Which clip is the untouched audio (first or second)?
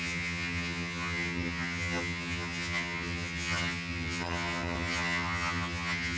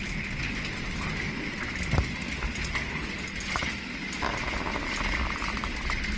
second